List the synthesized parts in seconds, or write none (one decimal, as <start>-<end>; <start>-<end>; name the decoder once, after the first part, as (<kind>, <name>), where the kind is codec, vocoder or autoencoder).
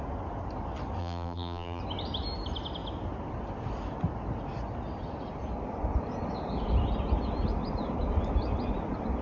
1.0-1.8 (vocoder, BigVGAN v2)